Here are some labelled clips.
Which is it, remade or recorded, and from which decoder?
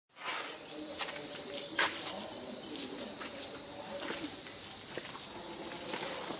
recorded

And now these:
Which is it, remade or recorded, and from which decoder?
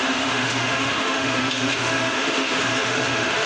remade, autoencoder, DAC-VAE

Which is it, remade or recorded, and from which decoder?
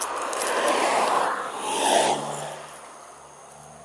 recorded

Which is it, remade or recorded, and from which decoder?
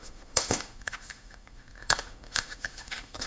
remade, autoencoder, DAC-VAE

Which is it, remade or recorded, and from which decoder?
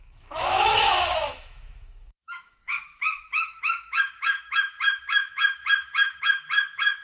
remade, autoencoder, DAC-VAE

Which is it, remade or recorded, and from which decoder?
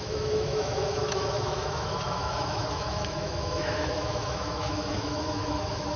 remade, autoencoder, DAC-VAE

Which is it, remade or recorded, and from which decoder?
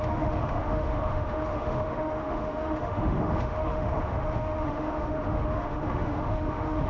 remade, autoencoder, DAC-VAE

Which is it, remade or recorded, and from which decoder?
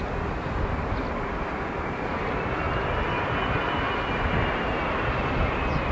recorded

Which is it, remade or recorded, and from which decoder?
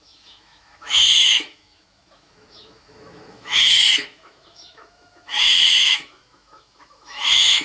remade, autoencoder, DAC-VAE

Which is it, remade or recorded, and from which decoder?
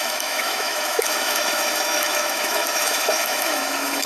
remade, autoencoder, DAC-VAE